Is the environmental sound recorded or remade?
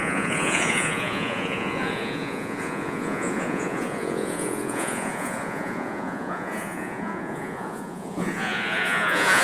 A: remade